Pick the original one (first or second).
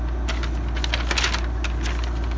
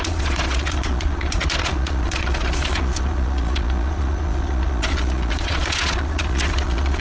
first